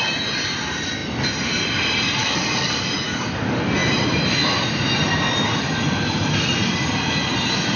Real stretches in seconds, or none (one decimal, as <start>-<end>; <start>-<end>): 0.0-2.2; 2.9-7.8